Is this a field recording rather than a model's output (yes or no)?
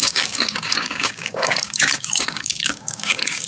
no